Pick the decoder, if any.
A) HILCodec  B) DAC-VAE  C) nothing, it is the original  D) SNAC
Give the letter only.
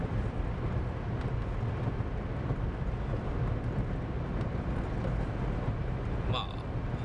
C